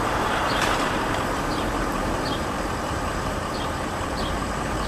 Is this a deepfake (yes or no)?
yes